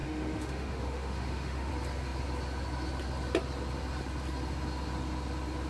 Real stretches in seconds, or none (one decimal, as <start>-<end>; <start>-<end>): 1.7-5.7